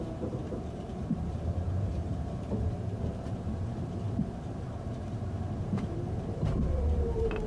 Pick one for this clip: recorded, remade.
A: remade